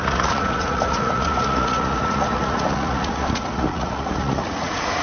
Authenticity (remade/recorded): remade